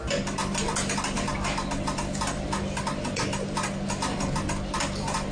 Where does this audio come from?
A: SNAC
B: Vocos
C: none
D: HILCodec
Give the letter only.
C